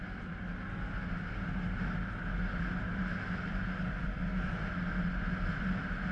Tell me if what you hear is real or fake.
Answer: real